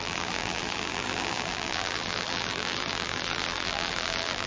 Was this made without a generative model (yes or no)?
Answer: no